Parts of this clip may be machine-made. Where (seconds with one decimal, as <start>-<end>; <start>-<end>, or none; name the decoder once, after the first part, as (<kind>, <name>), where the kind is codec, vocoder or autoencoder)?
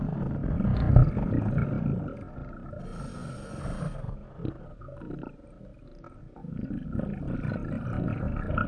none